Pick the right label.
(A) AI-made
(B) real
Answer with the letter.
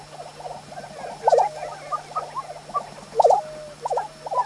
B